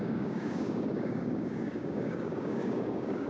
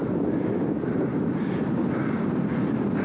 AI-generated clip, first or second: first